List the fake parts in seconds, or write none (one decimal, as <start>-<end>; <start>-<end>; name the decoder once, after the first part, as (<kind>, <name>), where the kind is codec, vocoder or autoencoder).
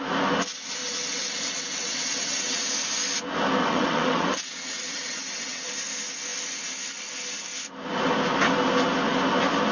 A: 0.8-2.6 (vocoder, WaveNeXt); 3.6-5.7